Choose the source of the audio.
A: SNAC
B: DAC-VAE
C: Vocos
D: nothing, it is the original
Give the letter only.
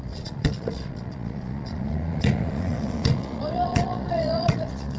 C